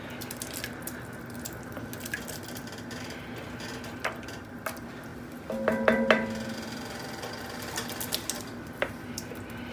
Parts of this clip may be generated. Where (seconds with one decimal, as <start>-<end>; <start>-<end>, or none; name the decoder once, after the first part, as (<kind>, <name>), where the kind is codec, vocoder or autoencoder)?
none